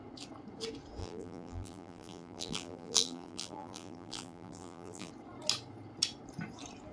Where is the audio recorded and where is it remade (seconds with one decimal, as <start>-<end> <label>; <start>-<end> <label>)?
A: 0.0-1.0 recorded; 1.0-5.1 remade; 5.1-6.9 recorded